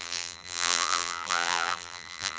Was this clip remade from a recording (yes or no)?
yes